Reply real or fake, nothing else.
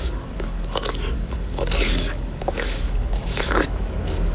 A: fake